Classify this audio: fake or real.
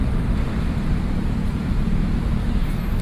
fake